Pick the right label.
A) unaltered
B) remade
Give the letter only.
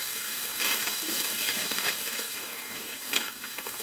B